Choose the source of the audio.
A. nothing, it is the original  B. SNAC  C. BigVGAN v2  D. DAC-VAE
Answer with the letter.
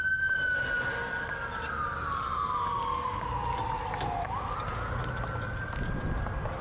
A